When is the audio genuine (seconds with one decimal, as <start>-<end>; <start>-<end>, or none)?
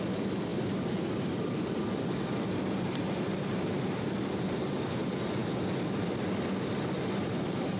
0.0-7.8